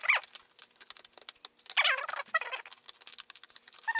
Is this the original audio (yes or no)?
yes